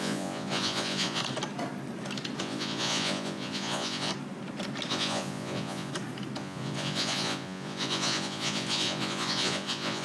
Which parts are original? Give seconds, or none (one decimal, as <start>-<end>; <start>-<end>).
1.2-2.4; 4.1-4.9; 5.9-6.4